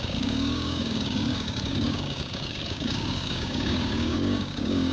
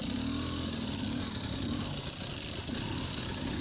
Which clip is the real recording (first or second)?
second